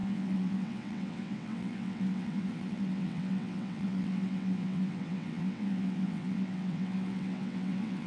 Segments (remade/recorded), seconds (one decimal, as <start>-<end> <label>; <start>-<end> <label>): 0.0-8.1 remade